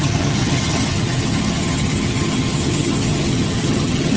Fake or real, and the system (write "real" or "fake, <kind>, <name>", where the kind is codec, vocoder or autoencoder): fake, vocoder, HiFi-GAN